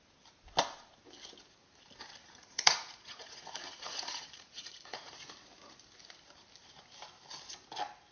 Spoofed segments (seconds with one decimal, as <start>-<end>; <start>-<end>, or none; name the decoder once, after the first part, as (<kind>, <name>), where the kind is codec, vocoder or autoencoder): 2.2-5.1 (vocoder, Vocos)